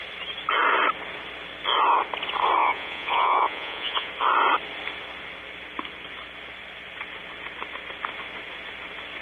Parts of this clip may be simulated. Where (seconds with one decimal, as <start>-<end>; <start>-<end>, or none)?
2.6-4.1